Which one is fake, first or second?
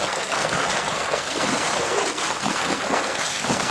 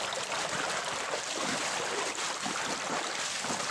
first